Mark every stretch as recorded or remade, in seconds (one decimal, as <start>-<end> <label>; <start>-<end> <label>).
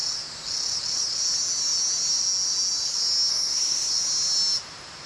0.0-3.3 recorded; 3.3-3.9 remade; 3.9-5.1 recorded